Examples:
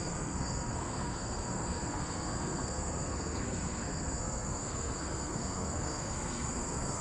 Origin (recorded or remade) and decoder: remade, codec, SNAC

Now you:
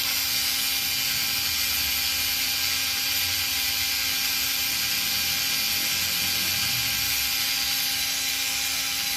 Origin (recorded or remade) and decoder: recorded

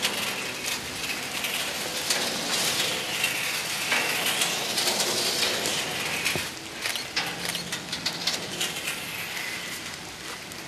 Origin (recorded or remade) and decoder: recorded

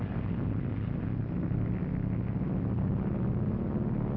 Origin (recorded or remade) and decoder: recorded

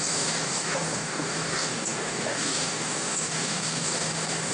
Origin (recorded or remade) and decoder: remade, codec, DAC